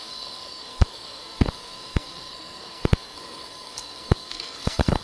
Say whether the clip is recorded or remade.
remade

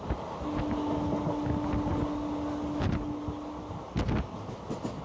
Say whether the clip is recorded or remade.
recorded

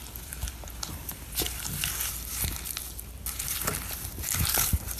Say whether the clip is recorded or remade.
remade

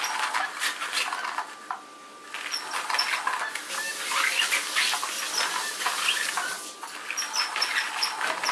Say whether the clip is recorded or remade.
recorded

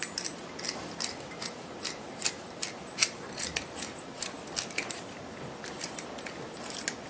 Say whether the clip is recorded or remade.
recorded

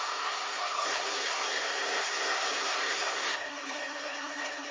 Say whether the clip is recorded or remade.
remade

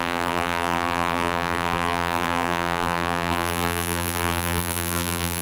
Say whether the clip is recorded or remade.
remade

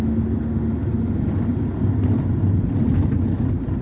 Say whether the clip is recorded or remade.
recorded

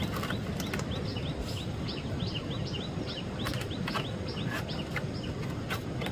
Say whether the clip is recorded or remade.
recorded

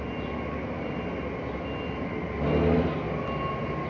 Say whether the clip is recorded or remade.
recorded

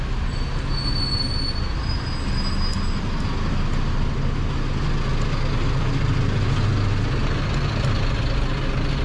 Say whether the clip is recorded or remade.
recorded